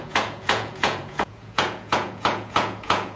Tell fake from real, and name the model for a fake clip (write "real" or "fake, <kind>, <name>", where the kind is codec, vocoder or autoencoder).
fake, vocoder, Vocos